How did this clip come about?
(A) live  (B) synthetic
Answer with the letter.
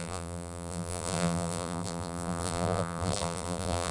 B